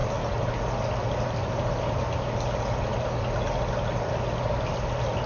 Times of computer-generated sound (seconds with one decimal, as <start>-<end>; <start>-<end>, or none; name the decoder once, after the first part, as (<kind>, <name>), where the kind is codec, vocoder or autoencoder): none